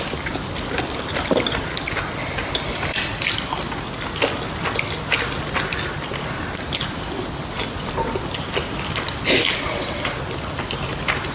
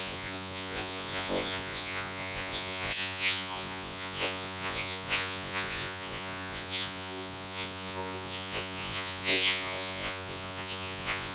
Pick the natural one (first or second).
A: first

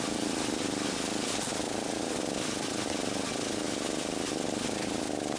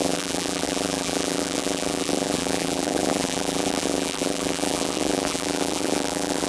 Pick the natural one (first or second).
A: first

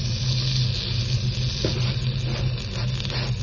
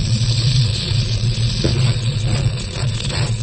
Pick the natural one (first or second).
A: first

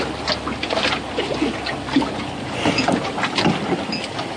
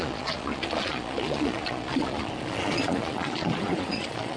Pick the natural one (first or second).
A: first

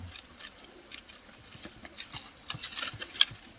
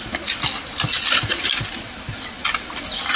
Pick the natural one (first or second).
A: second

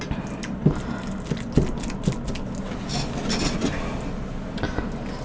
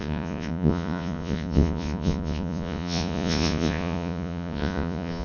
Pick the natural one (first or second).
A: first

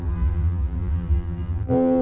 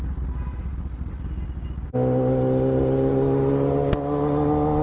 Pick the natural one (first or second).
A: second